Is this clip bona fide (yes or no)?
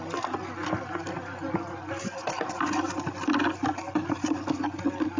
yes